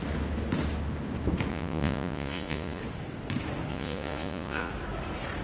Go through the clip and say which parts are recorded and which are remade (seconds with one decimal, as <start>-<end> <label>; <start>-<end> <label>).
0.0-1.5 recorded; 1.5-2.8 remade; 2.8-3.7 recorded; 3.7-4.7 remade; 4.7-5.4 recorded